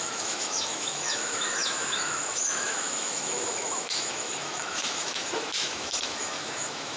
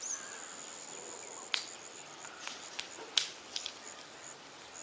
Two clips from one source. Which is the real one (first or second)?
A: second